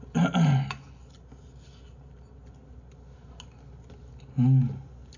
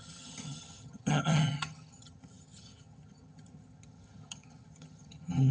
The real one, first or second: first